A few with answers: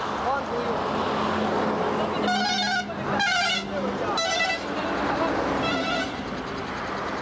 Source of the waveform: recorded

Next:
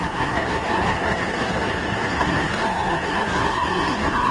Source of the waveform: remade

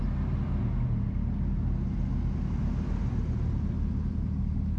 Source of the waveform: recorded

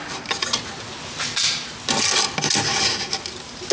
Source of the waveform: recorded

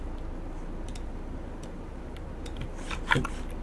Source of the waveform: recorded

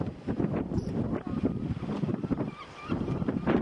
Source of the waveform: recorded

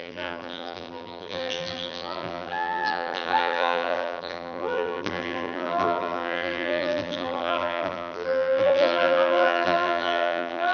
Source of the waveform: remade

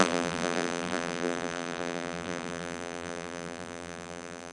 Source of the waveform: remade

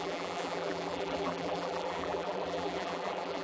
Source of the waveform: remade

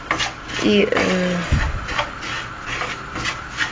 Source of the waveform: recorded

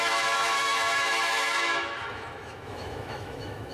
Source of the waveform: remade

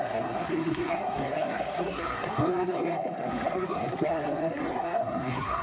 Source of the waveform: remade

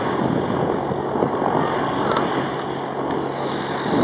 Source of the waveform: recorded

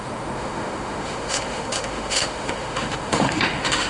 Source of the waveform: remade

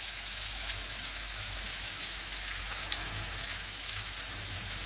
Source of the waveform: remade